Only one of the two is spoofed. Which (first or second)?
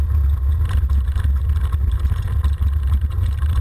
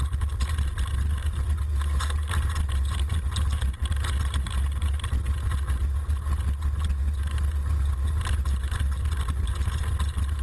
first